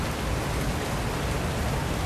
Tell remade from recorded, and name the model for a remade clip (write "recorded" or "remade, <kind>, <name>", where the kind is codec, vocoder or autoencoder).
recorded